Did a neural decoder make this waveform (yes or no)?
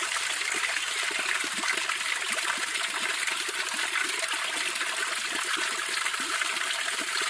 no